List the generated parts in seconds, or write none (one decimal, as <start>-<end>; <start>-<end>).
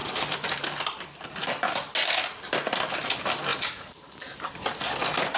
none